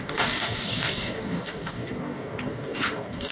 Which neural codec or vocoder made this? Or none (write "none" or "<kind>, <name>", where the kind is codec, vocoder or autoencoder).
codec, DAC